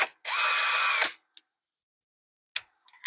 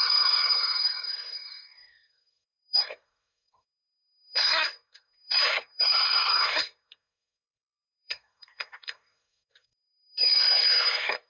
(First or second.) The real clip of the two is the first